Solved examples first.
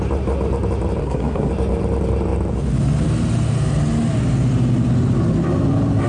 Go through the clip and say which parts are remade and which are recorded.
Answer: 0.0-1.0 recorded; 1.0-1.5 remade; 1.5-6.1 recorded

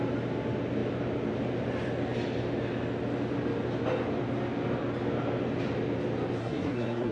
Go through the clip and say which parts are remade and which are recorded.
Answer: 0.0-6.4 recorded; 6.4-7.1 remade

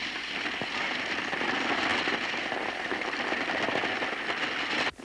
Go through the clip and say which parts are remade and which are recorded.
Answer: 0.0-5.0 recorded

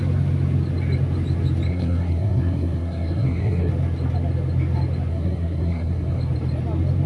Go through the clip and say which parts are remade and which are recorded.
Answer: 0.0-1.7 recorded; 1.7-3.7 remade; 3.7-5.1 recorded; 5.1-6.2 remade; 6.2-7.1 recorded

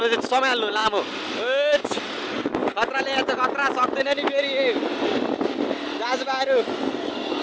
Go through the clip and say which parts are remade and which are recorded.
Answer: 0.0-7.4 recorded

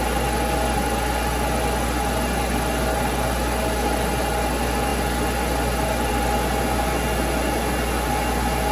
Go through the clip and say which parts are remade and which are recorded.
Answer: 0.0-8.7 recorded

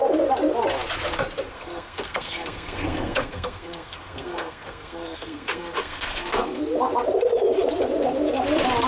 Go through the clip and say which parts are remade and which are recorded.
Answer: 0.0-1.5 recorded; 1.5-6.6 remade; 6.6-8.9 recorded